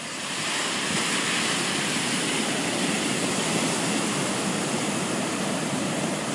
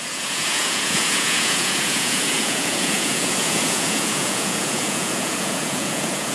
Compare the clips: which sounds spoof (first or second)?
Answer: second